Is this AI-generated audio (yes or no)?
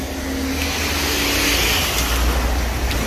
no